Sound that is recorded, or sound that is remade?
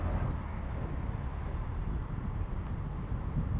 recorded